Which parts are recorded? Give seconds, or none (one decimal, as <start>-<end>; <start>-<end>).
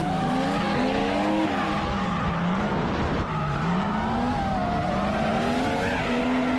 0.0-1.0; 1.6-6.6